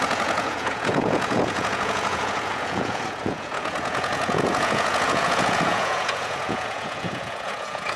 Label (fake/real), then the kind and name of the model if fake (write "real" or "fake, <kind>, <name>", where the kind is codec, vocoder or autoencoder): fake, vocoder, Vocos